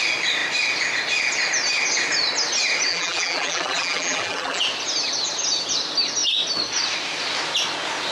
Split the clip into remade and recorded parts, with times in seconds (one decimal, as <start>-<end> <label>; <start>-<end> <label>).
0.0-2.9 recorded; 2.9-4.6 remade; 4.6-8.1 recorded